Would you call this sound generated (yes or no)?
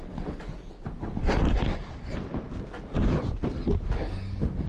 no